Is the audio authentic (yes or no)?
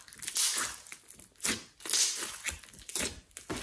yes